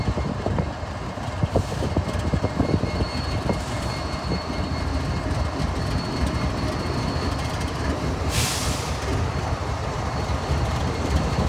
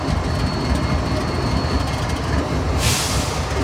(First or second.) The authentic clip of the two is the second